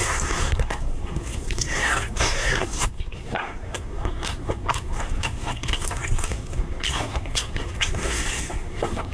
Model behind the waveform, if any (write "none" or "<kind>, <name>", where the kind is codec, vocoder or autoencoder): codec, SNAC